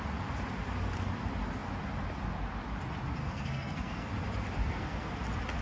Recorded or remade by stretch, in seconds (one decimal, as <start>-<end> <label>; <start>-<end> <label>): 0.0-3.2 recorded; 3.2-4.1 remade; 4.1-4.6 recorded; 4.6-5.1 remade; 5.1-5.6 recorded